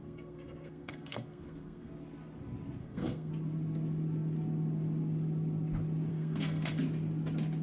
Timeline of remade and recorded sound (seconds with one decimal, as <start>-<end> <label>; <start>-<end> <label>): 0.0-1.9 remade; 1.9-2.8 recorded; 2.8-3.3 remade; 3.3-6.1 recorded; 6.1-6.7 remade; 6.7-7.6 recorded